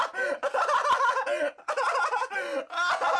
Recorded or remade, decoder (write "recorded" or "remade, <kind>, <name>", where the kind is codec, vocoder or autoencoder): recorded